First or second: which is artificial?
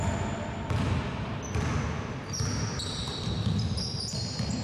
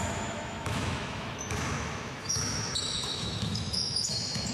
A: second